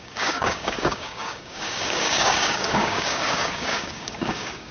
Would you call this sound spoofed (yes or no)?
yes